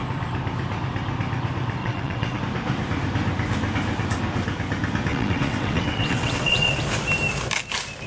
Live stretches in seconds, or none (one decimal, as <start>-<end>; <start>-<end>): 0.0-1.8; 2.4-5.1; 6.8-8.1